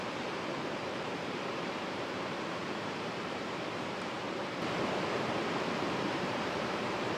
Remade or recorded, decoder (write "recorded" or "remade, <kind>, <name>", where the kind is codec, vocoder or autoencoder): remade, vocoder, BigVGAN v2